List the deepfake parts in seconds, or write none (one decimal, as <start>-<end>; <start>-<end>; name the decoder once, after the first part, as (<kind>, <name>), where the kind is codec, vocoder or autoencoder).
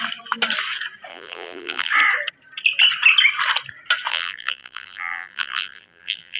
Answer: 1.1-1.9 (vocoder, BigVGAN v2); 4.1-6.4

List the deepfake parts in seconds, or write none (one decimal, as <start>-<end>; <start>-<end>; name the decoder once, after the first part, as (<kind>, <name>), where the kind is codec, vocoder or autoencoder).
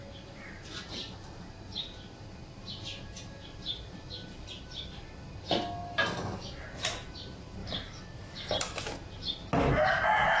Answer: 0.0-0.8 (vocoder, BigVGAN v2); 3.2-5.8; 7.6-8.8